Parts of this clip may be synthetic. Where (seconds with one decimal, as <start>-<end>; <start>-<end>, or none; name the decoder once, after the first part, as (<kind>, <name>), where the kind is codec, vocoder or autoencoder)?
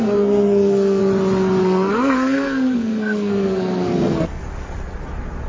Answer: 0.0-1.0 (codec, SNAC); 1.6-4.4